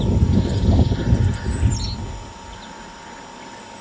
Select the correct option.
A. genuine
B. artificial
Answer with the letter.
A